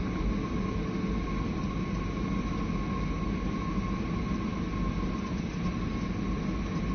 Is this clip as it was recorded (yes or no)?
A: yes